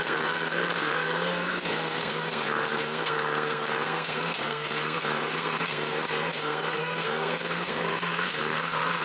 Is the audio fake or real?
fake